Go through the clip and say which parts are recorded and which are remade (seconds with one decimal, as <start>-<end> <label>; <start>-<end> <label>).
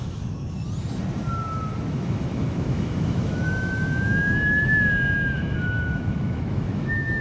0.0-0.6 remade; 0.6-1.9 recorded; 1.9-7.2 remade